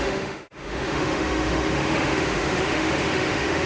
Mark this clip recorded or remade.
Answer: remade